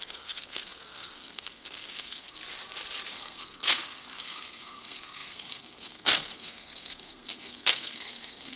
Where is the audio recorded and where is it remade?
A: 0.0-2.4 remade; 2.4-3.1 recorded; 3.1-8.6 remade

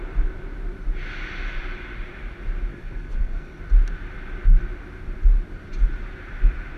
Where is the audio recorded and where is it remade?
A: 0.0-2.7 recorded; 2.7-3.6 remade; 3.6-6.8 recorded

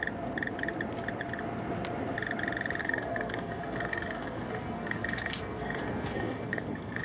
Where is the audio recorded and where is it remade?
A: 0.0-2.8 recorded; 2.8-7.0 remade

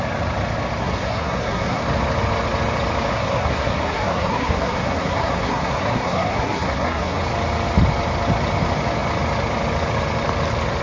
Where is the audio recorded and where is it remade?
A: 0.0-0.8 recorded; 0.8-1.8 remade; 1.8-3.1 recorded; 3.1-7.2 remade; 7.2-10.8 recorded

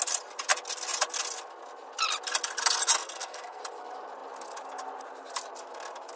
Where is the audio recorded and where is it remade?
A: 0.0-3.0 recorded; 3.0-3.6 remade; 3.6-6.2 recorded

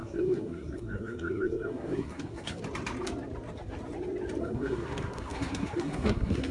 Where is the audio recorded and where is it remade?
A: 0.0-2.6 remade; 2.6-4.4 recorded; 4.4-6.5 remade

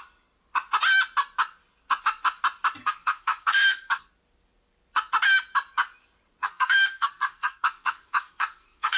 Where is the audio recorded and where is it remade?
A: 0.0-2.8 recorded; 2.8-4.1 remade; 4.1-6.4 recorded; 6.4-9.0 remade

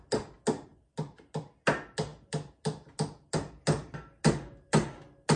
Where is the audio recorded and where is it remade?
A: 0.0-5.4 recorded